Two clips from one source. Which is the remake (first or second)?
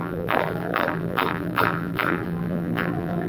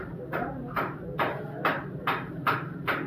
first